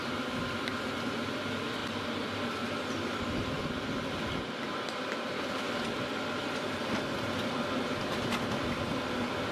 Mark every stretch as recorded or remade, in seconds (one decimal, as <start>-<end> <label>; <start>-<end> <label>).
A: 0.0-9.5 recorded